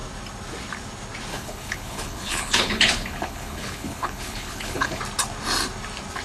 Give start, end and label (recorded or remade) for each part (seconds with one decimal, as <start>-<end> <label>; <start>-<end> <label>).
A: 0.0-1.3 recorded; 1.3-5.0 remade; 5.0-6.2 recorded